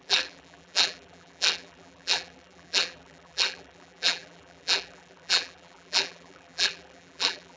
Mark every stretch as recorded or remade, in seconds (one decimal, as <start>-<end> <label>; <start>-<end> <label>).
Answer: 0.0-7.6 remade